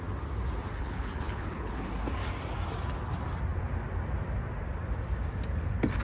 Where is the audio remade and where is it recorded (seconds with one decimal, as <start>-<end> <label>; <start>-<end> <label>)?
0.0-0.8 recorded; 0.8-1.9 remade; 1.9-6.0 recorded